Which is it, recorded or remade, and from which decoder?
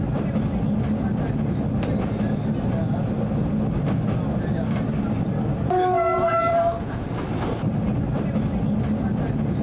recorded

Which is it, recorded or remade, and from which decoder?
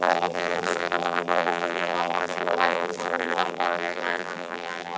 remade, vocoder, BigVGAN v2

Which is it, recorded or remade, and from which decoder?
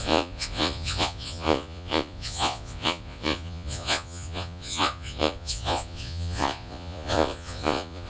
remade, vocoder, Vocos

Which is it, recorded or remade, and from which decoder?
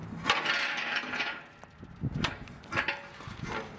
recorded